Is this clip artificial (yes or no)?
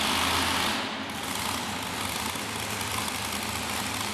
no